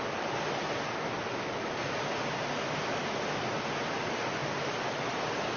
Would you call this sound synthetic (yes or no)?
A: no